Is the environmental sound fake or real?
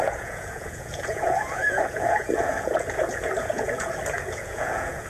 fake